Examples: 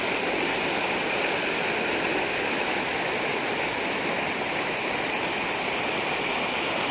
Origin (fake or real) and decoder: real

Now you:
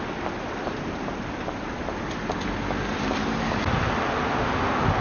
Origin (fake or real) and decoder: real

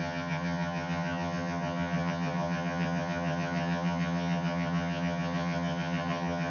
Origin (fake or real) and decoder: fake, vocoder, HiFi-GAN